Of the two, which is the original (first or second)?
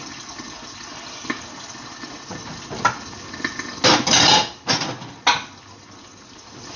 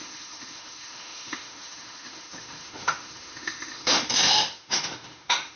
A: first